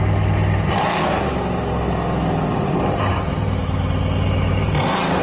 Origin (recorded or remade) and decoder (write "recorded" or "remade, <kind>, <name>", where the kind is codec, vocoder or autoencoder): recorded